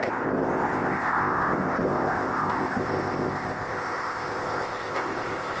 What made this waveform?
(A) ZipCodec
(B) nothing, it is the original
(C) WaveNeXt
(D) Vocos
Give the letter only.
A